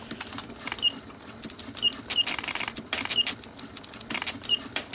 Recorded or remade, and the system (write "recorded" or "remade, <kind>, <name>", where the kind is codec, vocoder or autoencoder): recorded